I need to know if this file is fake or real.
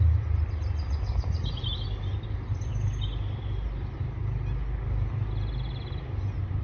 real